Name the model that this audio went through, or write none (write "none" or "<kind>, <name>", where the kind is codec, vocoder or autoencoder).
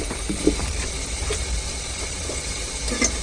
none